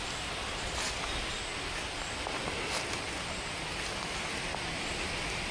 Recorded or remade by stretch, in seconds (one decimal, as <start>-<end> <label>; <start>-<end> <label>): 0.0-5.5 recorded